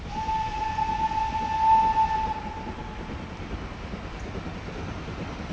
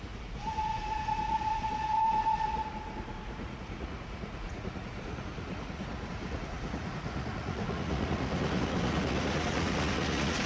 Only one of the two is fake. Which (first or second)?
second